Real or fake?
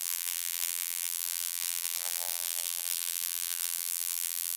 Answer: fake